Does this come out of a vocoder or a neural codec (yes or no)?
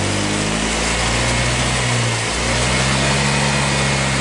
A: no